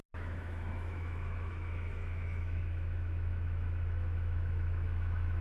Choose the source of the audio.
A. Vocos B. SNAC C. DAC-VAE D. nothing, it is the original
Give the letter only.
C